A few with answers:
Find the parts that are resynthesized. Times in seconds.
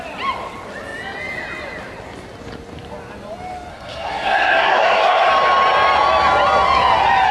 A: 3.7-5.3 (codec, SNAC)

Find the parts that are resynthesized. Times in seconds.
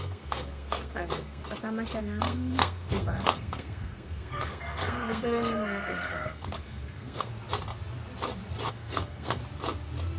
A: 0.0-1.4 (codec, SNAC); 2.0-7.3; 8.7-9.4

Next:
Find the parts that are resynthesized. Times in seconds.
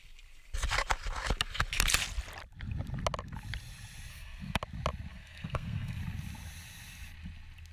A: 4.1-4.6 (codec, SNAC); 5.1-6.0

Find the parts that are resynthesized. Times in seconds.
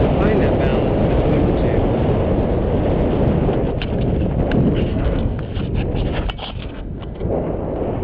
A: 4.9-5.4 (codec, SNAC); 6.6-7.3